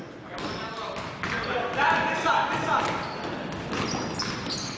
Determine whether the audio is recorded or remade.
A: recorded